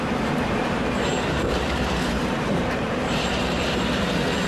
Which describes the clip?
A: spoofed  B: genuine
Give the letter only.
A